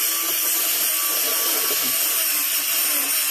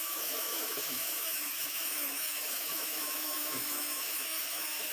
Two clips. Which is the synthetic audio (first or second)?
second